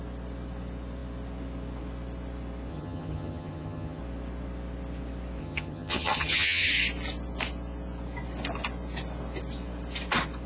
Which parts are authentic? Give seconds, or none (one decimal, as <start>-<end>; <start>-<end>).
0.0-2.7; 4.0-5.4; 6.7-10.5